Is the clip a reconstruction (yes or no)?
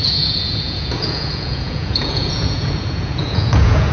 yes